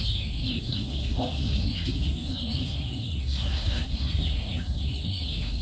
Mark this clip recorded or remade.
remade